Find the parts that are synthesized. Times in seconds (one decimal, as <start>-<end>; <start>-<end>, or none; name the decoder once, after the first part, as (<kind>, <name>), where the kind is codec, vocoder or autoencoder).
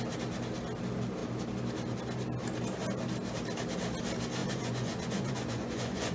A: 4.4-6.1 (vocoder, Vocos)